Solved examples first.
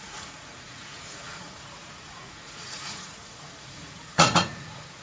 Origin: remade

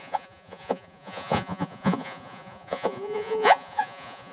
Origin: remade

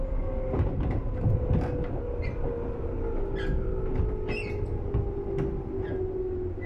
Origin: recorded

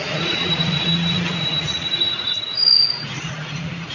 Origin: remade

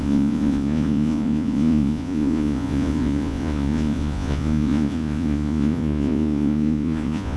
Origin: remade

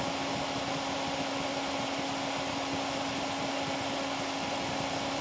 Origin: recorded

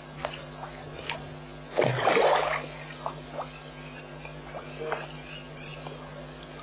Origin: recorded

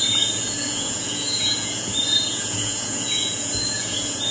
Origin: remade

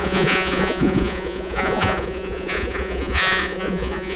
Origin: remade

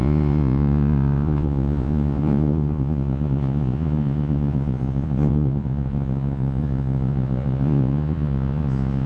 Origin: remade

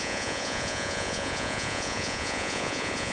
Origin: remade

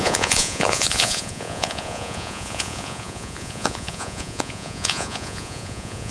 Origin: remade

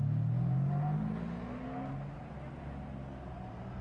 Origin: recorded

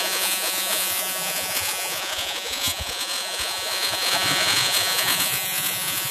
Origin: remade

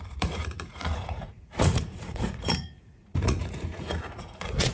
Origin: remade